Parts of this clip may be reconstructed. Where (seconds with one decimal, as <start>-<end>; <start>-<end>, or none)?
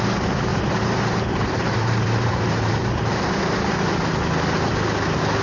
0.5-3.7